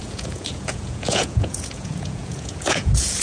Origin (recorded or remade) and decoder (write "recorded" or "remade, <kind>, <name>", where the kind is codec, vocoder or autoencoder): remade, vocoder, Vocos